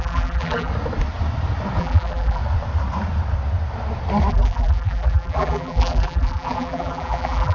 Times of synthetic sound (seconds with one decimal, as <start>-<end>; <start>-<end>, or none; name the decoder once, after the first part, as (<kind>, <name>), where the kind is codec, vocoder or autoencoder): 0.0-0.7 (vocoder, BigVGAN v2); 1.8-2.4; 4.3-7.5